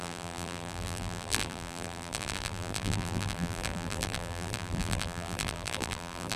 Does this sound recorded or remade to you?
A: remade